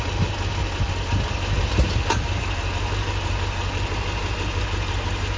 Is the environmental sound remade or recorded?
recorded